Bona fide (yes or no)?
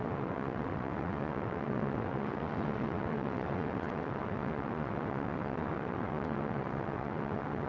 no